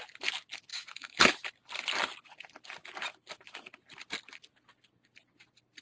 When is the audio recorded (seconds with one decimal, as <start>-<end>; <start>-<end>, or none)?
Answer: 0.0-0.7; 1.6-5.8